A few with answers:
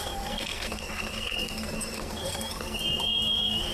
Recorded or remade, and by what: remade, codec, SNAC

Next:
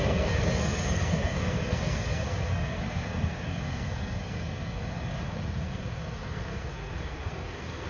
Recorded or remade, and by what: remade, codec, SNAC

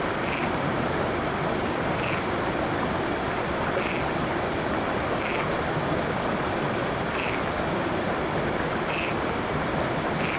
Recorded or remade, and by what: recorded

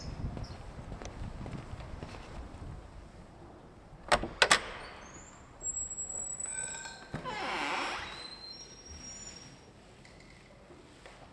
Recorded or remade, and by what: recorded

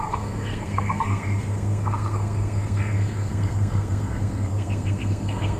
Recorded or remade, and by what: remade, codec, SNAC